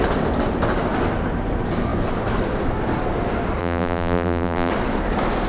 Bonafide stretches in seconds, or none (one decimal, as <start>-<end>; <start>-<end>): 0.0-3.6; 4.7-5.5